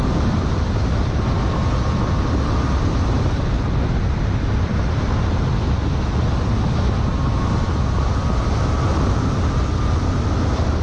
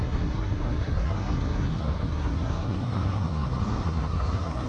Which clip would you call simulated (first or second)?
second